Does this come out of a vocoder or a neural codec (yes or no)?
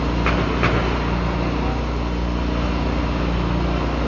no